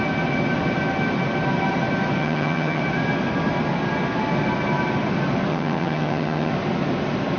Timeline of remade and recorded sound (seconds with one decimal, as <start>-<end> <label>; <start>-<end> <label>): 0.0-2.2 recorded; 2.2-2.8 remade; 2.8-5.5 recorded; 5.5-6.5 remade; 6.5-7.4 recorded